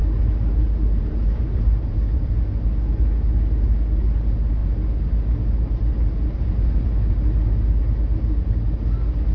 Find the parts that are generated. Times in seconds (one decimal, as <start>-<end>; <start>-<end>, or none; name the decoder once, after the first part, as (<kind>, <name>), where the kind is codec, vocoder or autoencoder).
none